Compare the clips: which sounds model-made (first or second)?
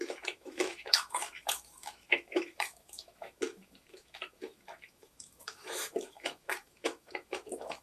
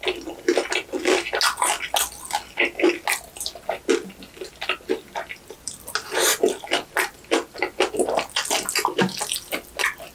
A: first